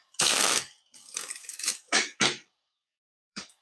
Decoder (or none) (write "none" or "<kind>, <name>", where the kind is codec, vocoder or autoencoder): codec, DAC